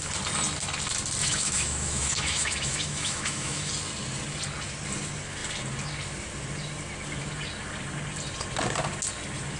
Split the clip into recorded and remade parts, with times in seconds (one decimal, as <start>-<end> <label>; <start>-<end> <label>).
0.0-1.2 recorded; 1.2-3.7 remade; 3.7-9.6 recorded